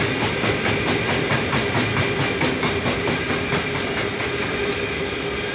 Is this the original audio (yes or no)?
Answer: yes